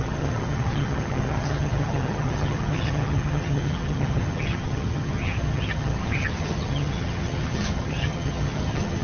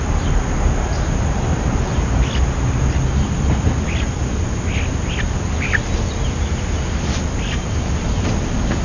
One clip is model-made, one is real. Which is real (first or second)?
second